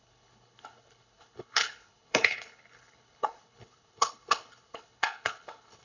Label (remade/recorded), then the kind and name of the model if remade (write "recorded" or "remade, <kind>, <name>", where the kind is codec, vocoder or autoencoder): remade, codec, HILCodec